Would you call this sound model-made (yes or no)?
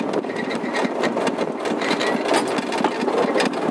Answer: no